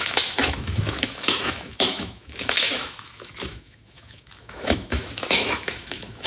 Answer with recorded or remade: remade